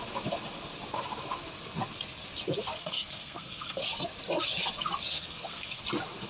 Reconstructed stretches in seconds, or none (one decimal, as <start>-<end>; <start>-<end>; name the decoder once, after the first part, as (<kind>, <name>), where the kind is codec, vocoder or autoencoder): 2.8-3.8 (codec, SNAC); 5.1-5.8